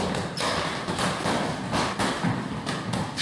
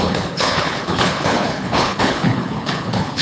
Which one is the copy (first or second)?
second